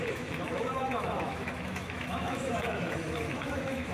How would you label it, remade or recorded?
remade